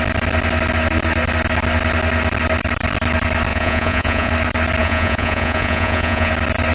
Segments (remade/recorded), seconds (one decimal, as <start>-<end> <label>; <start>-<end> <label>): 0.0-3.5 recorded; 3.5-4.3 remade; 4.3-4.8 recorded; 4.8-6.3 remade; 6.3-6.7 recorded